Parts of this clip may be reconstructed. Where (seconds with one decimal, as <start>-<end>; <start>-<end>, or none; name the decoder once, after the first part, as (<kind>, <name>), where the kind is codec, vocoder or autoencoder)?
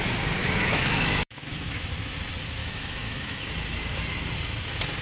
0.4-1.9 (autoencoder, DAC-VAE); 2.6-3.4